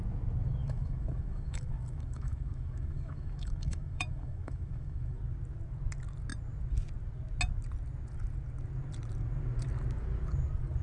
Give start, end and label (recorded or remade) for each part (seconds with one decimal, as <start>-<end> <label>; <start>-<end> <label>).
0.0-0.6 recorded; 0.6-5.2 remade; 5.2-10.8 recorded